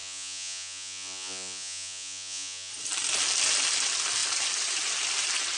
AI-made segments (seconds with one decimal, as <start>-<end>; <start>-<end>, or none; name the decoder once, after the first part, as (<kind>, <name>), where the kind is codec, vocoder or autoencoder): 0.0-2.7 (vocoder, Vocos)